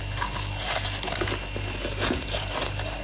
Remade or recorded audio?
recorded